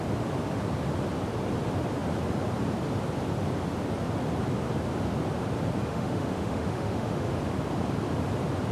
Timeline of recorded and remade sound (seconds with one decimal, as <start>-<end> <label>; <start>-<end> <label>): 0.0-5.9 recorded; 5.9-7.3 remade; 7.3-8.7 recorded